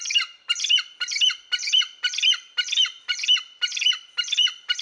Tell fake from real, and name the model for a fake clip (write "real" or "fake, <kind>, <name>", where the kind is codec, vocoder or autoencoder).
fake, vocoder, BigVGAN v2